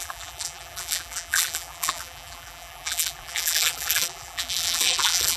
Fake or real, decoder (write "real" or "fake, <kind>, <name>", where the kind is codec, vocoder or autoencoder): fake, vocoder, BigVGAN v2